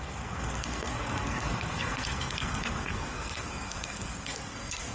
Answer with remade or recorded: remade